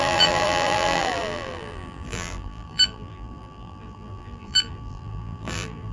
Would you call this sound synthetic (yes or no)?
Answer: yes